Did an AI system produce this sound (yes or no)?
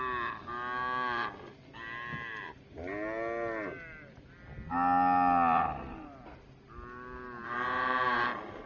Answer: no